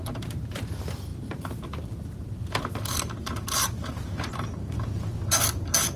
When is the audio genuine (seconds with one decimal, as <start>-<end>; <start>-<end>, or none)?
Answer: none